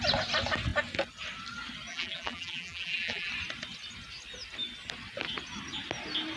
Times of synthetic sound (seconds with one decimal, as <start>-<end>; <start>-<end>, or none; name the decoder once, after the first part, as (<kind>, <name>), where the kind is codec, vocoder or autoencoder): 1.9-3.3 (vocoder, BigVGAN v2)